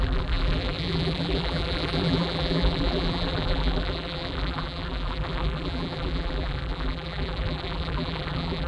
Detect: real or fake fake